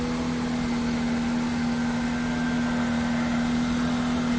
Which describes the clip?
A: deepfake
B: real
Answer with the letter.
B